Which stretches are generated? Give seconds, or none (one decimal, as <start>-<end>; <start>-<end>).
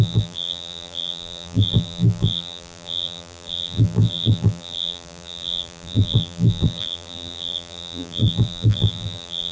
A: 0.0-9.5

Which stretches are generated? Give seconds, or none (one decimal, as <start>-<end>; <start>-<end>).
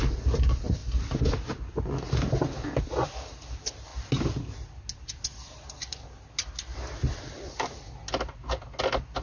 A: none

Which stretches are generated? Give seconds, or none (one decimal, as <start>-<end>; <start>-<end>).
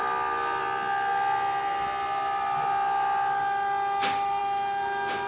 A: none